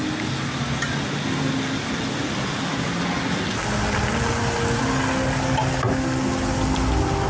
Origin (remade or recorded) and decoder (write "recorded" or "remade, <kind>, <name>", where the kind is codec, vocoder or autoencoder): recorded